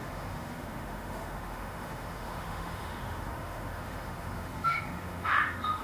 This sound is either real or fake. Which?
fake